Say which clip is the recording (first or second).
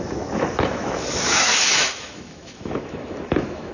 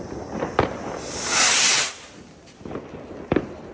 second